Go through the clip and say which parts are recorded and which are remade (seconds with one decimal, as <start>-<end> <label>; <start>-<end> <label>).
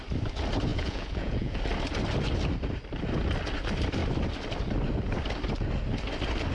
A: 0.0-0.7 recorded; 0.7-1.6 remade; 1.6-6.5 recorded